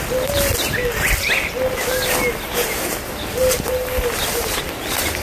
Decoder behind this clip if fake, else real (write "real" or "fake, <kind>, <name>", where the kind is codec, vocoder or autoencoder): real